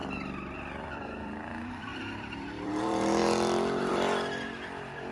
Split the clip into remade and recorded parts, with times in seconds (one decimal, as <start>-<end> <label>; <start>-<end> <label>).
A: 0.0-3.2 remade; 3.2-3.8 recorded; 3.8-5.1 remade

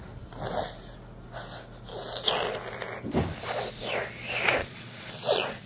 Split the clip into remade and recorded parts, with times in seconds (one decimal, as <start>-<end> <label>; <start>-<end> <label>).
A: 0.0-4.6 recorded; 4.6-5.7 remade

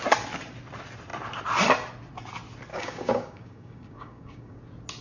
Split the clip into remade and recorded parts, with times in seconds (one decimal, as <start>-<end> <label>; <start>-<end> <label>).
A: 0.0-2.7 recorded; 2.7-4.6 remade; 4.6-5.0 recorded